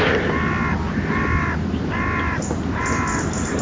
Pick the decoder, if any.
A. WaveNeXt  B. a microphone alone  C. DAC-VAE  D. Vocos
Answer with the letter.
B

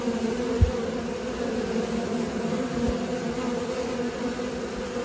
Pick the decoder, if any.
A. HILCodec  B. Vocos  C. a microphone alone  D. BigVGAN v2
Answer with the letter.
C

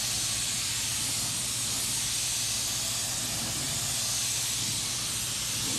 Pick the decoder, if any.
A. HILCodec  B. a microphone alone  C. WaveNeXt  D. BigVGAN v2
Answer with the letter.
B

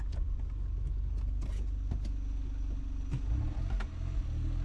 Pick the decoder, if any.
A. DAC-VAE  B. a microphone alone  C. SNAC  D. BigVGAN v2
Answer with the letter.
B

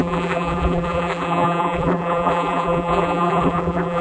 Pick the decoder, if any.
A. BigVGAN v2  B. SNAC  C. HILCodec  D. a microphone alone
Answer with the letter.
A